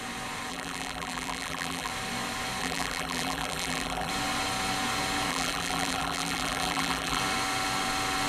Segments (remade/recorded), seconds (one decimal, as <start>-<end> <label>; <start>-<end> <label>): 0.0-0.5 recorded; 0.5-1.9 remade; 1.9-2.6 recorded; 2.6-4.1 remade; 4.1-5.3 recorded; 5.3-7.2 remade; 7.2-8.3 recorded